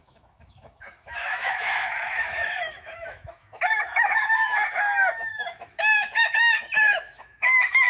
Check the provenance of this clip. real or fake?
fake